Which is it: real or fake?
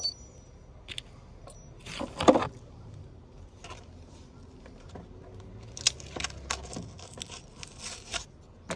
real